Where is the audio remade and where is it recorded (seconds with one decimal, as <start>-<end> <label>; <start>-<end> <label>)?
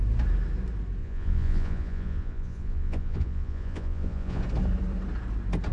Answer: 0.0-1.0 recorded; 1.0-4.4 remade; 4.4-5.7 recorded